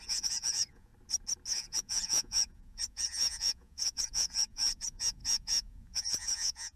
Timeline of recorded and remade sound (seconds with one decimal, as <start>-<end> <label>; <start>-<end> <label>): 0.0-0.9 remade; 0.9-1.5 recorded; 1.5-6.8 remade